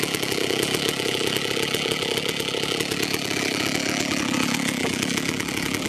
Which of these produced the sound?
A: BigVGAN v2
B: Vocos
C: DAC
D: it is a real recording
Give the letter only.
A